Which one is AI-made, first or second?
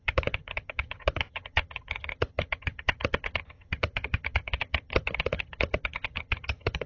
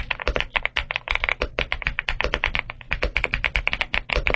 first